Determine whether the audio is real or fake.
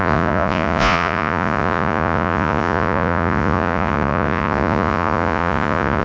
fake